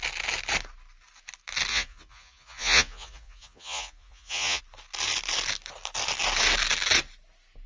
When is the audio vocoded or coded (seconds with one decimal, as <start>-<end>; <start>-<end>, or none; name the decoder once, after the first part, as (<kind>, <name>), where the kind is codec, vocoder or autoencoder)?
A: 1.7-4.6 (vocoder, Vocos)